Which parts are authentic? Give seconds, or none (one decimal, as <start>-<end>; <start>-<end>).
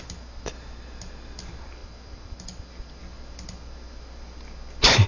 0.0-1.8; 3.0-5.1